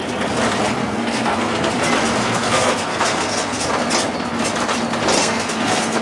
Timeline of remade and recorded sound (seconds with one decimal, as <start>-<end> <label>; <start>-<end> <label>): 0.0-0.8 recorded; 0.8-1.7 remade; 1.7-2.2 recorded; 2.2-3.7 remade; 3.7-5.2 recorded; 5.2-6.0 remade